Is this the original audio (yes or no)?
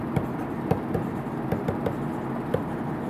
yes